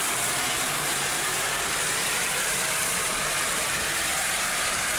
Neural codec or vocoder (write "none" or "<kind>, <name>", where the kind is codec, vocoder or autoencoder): vocoder, BigVGAN v2